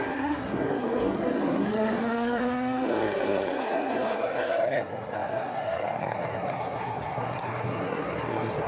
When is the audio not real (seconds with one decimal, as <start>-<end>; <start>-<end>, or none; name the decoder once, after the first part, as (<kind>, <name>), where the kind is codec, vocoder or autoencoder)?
0.0-8.7 (codec, SNAC)